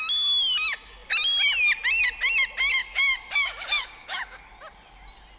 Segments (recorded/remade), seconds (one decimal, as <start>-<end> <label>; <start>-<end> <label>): 0.0-2.8 recorded; 2.8-4.4 remade; 4.4-5.4 recorded